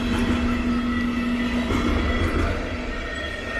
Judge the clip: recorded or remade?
recorded